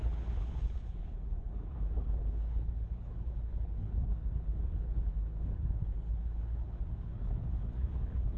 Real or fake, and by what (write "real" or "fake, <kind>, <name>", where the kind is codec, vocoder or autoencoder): fake, codec, HILCodec